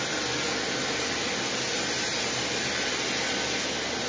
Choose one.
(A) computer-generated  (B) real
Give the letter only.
B